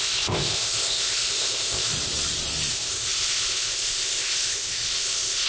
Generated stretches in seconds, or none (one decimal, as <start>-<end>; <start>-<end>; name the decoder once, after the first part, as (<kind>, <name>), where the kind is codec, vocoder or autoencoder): 0.0-1.9 (codec, ZipCodec); 2.7-5.5